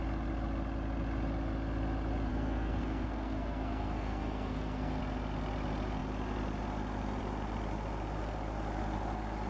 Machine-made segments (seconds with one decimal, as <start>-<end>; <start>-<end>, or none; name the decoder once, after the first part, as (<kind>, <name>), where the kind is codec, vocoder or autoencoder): 2.3-5.0 (codec, SNAC)